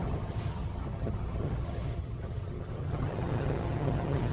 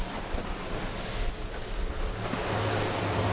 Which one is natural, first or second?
second